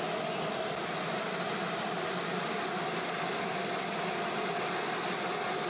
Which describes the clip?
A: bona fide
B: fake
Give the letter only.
A